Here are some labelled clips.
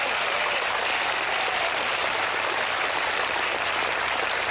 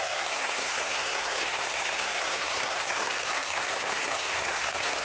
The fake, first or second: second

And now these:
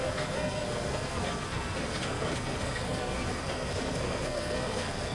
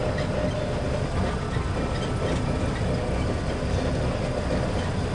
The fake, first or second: first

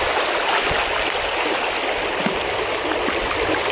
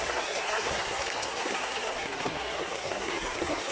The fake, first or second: second